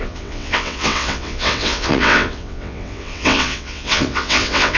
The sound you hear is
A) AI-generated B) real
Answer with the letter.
A